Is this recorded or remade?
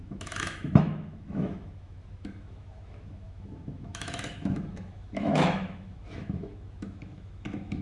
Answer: remade